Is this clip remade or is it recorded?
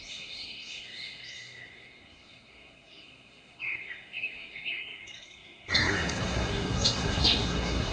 remade